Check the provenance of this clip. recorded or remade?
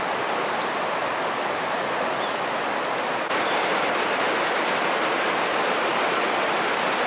recorded